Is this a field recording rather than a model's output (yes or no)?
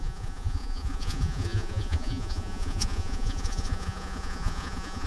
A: no